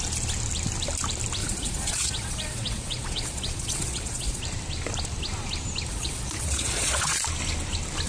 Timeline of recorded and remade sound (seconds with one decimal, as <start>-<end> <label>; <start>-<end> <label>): 0.0-1.4 recorded; 1.4-4.4 remade; 4.4-5.9 recorded; 5.9-7.2 remade; 7.2-8.1 recorded